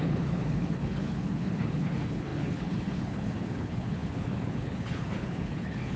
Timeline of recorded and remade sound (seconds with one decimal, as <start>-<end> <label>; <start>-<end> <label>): 0.0-6.0 remade